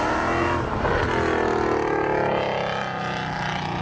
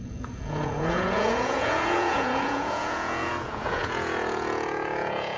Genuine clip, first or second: first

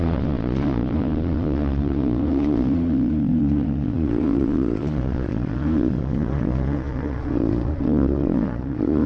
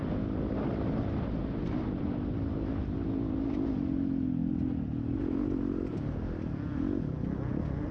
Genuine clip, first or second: second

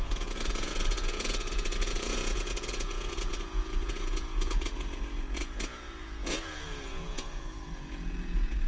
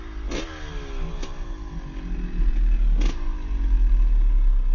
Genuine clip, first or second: second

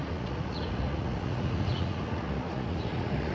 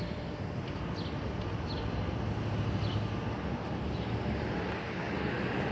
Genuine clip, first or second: second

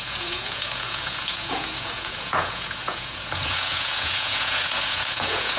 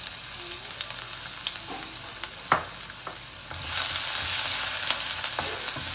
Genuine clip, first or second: second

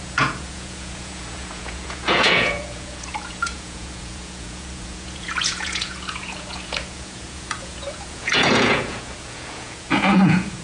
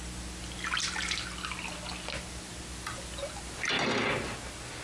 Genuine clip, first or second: second